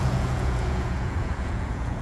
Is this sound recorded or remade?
remade